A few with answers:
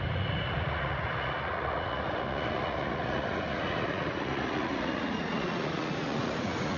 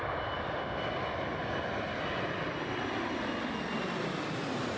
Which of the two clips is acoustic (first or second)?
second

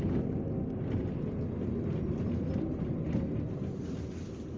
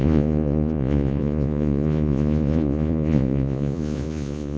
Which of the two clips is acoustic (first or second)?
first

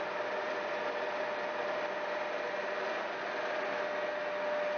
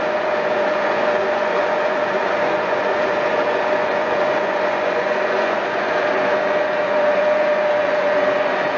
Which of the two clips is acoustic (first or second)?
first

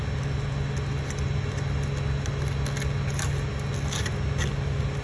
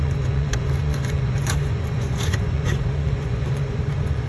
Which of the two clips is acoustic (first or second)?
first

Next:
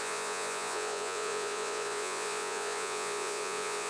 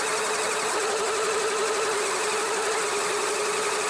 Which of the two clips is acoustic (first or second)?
second